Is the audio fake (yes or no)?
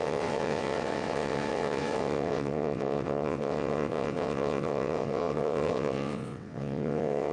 yes